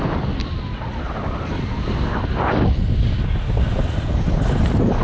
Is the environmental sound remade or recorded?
recorded